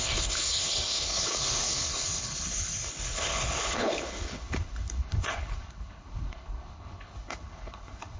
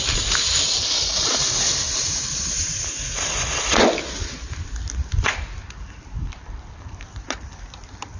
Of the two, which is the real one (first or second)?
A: second